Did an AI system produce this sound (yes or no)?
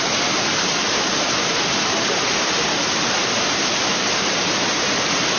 yes